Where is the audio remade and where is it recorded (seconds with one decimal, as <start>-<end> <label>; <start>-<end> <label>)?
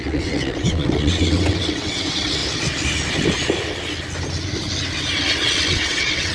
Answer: 0.0-2.4 remade; 2.4-5.7 recorded; 5.7-6.3 remade